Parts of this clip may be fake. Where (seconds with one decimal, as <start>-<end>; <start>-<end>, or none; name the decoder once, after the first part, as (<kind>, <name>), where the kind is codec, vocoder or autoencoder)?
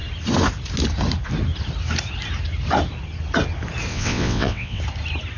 3.9-4.8 (vocoder, WaveNeXt)